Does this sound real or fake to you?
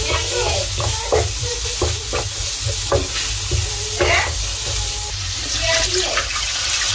real